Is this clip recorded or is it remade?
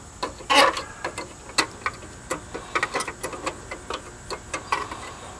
recorded